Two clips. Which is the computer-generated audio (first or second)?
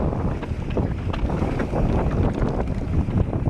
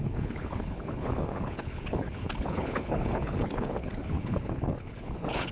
second